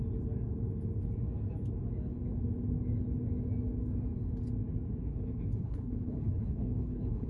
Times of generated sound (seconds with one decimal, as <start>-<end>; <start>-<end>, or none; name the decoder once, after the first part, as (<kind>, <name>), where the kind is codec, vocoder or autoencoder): 5.1-7.3 (codec, HILCodec)